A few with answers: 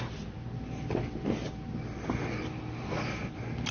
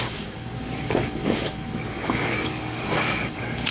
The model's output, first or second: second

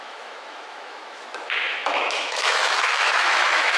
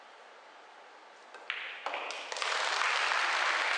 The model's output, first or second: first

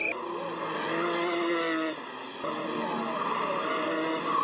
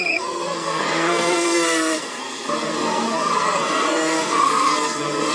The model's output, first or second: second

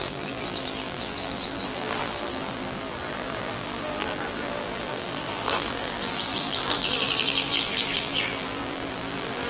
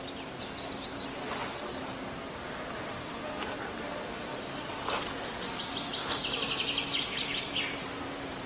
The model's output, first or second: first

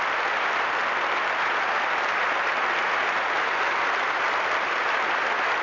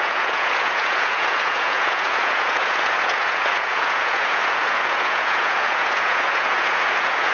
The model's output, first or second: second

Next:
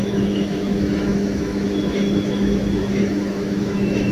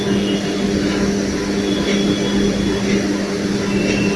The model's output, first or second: first